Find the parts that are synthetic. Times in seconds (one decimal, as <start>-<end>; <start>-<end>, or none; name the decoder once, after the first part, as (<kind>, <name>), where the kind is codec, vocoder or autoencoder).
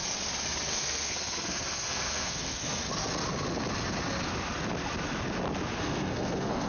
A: 0.7-2.8 (codec, SNAC); 5.8-6.7